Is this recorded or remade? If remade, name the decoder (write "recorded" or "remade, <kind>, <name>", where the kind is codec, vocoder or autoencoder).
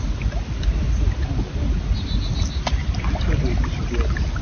recorded